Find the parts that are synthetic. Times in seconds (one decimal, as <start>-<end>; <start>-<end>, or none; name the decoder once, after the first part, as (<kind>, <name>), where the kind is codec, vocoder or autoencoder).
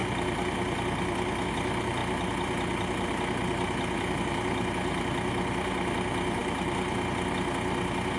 6.4-7.3 (vocoder, BigVGAN v2)